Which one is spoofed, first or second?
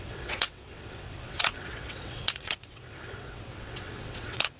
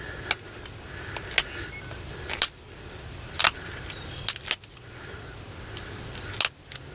first